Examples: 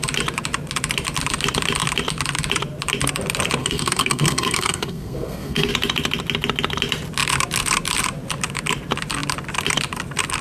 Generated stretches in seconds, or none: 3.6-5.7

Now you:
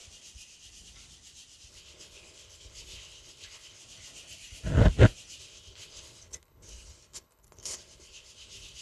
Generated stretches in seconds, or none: 1.7-3.8; 5.4-8.8

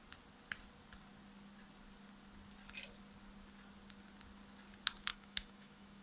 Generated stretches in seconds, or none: 5.1-6.0

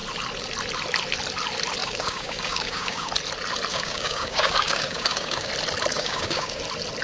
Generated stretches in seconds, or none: 1.8-3.1; 3.7-5.5; 5.9-6.6

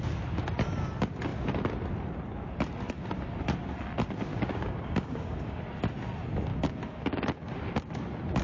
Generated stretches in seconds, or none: 4.3-5.6; 6.5-7.6

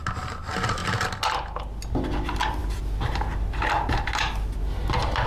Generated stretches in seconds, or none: none